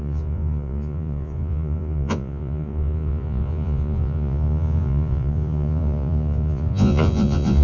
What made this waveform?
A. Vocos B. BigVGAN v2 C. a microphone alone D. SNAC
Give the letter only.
A